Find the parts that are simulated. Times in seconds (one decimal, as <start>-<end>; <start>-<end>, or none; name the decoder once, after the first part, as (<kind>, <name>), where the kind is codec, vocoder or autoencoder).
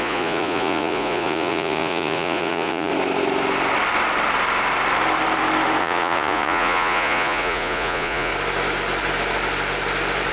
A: 0.0-2.9 (vocoder, Vocos); 5.8-8.3